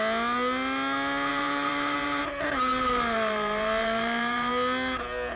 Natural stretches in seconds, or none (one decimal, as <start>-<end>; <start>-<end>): 0.0-1.3; 2.2-2.7; 4.5-5.4